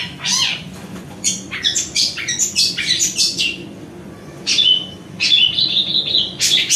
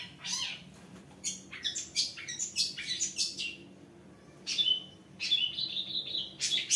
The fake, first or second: first